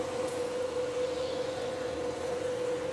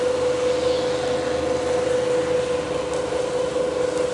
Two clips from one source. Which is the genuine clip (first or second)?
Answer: second